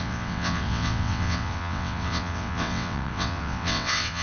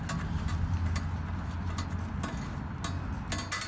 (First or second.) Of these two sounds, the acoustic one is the second